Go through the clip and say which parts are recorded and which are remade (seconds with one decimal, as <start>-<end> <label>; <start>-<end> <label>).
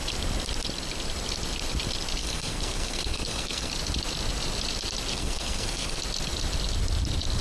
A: 0.0-2.2 recorded; 2.2-3.7 remade; 3.7-5.1 recorded; 5.1-6.0 remade; 6.0-7.4 recorded